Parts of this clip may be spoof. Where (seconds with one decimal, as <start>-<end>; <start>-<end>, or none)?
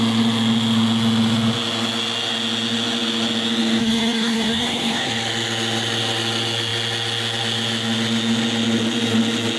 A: 3.8-5.1